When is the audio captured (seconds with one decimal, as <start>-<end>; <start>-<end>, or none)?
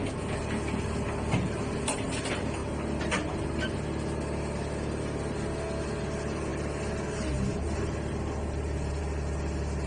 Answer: 0.0-9.9